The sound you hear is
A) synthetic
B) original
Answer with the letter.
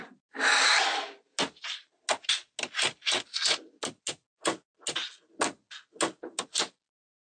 B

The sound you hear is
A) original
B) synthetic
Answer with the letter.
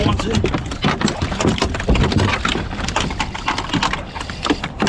A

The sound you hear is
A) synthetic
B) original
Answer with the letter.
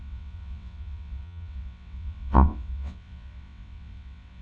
A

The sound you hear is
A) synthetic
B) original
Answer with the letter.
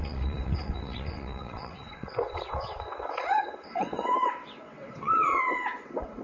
A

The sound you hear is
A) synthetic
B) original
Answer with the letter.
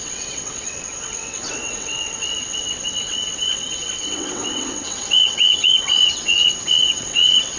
A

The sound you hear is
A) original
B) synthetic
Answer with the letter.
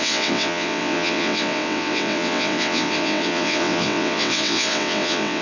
B